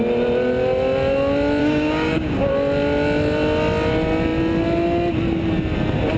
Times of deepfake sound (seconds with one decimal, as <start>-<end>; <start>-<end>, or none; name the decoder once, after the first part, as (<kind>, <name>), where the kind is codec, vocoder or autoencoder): 1.6-2.5 (codec, DAC)